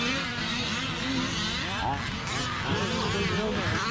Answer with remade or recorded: recorded